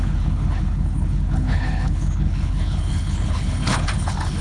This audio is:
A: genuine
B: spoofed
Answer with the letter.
B